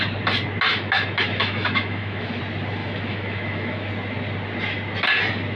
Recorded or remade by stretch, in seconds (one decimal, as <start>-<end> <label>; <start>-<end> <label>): 0.0-0.7 recorded; 0.7-2.4 remade; 2.4-2.8 recorded; 2.8-3.9 remade; 3.9-5.6 recorded